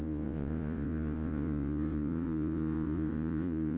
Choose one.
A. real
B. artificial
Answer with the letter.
B